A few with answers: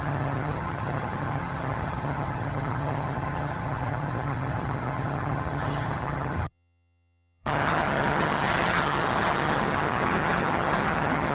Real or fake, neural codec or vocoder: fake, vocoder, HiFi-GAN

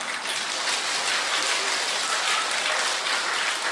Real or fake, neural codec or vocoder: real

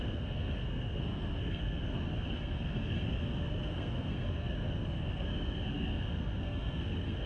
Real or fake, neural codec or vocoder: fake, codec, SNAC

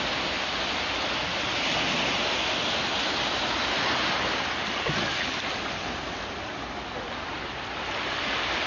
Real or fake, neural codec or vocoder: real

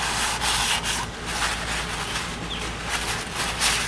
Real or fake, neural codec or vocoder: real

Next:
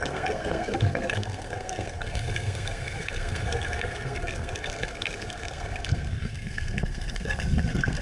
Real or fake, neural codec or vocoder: fake, codec, SNAC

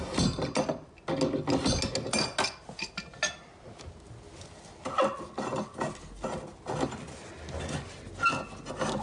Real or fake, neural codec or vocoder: real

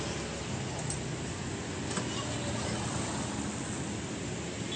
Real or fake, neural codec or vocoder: real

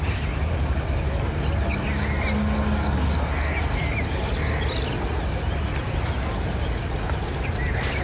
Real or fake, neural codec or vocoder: real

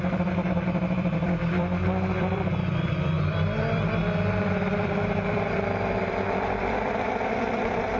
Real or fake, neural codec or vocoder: fake, vocoder, BigVGAN v2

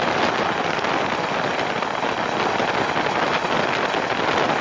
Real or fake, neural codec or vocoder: real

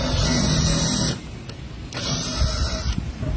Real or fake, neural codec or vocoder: real